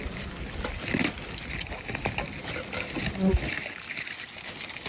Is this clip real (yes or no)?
yes